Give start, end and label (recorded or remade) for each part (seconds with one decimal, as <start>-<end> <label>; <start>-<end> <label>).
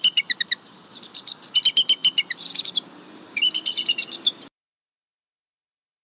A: 0.0-6.0 recorded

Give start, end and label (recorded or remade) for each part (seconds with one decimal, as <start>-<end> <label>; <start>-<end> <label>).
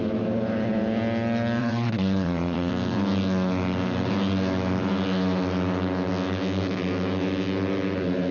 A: 0.0-1.6 recorded; 1.6-2.7 remade; 2.7-8.3 recorded